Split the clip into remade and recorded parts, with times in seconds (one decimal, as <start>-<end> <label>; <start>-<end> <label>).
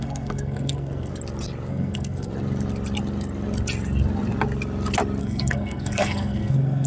0.0-1.1 remade; 1.1-1.7 recorded; 1.7-2.3 remade; 2.3-5.2 recorded; 5.2-6.9 remade